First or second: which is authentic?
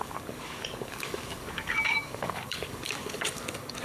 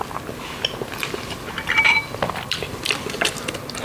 second